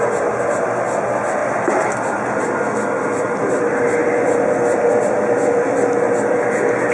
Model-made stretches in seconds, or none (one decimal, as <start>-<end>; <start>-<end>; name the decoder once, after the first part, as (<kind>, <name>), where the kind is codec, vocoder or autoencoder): none